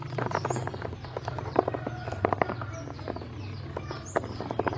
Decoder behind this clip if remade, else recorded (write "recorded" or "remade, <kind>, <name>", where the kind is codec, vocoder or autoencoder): recorded